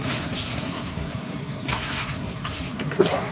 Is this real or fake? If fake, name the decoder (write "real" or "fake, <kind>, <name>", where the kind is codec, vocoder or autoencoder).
fake, codec, SNAC